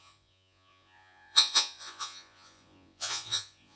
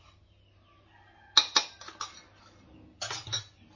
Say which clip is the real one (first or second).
second